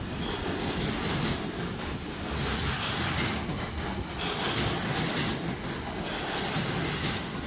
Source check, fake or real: real